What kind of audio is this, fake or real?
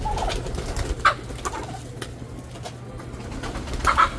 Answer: real